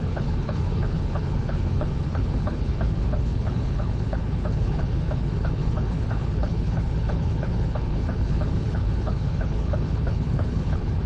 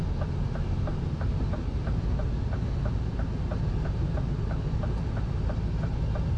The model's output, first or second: first